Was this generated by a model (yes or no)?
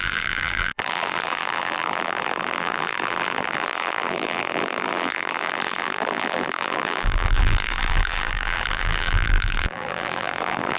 yes